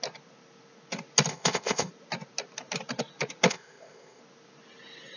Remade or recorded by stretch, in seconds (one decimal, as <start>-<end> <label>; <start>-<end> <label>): 0.0-1.3 recorded; 1.3-1.9 remade; 1.9-3.5 recorded; 3.5-4.2 remade; 4.2-5.2 recorded